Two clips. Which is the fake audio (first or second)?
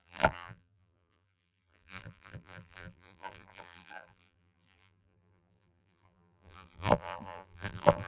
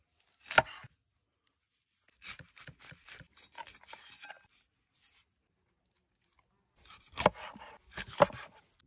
first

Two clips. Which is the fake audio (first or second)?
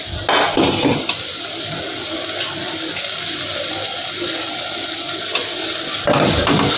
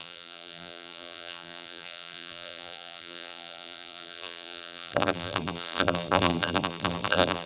second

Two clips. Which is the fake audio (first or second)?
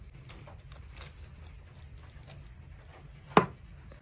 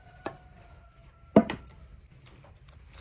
second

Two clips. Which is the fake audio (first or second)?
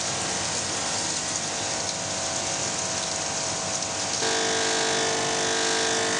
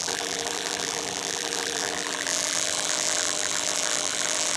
second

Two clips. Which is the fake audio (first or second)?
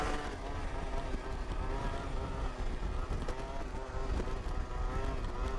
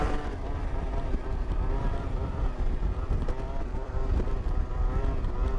second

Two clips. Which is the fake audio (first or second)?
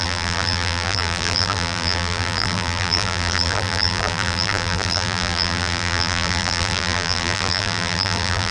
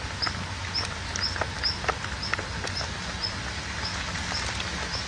first